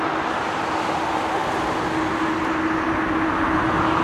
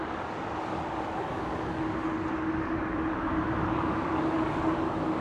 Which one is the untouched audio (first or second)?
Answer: first